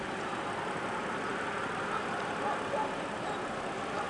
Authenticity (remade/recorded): recorded